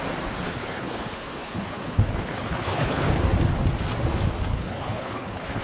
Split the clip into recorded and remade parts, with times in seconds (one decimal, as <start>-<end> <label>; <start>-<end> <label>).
0.0-0.5 recorded; 0.5-3.1 remade; 3.1-4.5 recorded; 4.5-5.6 remade